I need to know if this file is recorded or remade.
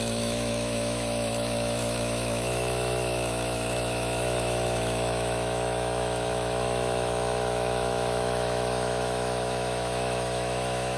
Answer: remade